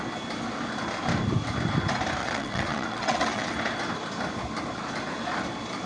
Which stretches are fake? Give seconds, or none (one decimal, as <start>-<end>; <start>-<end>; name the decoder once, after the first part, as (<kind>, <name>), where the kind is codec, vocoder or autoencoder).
2.2-3.5 (vocoder, WaveNeXt)